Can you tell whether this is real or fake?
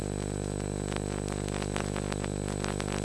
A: real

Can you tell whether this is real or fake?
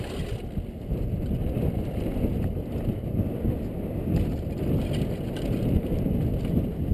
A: real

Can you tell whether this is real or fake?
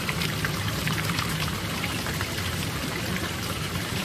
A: fake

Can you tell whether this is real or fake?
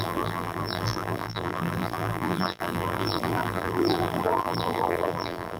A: fake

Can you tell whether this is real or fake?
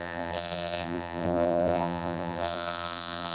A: fake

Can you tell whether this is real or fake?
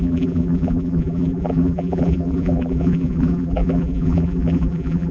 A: fake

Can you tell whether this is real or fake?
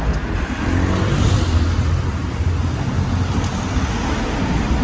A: real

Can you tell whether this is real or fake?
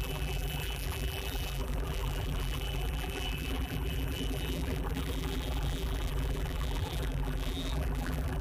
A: fake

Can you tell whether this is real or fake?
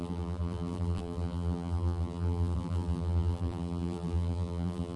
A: fake